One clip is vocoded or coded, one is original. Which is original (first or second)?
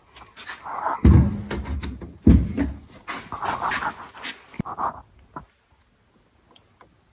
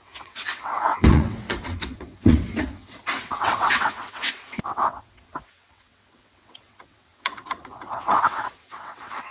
first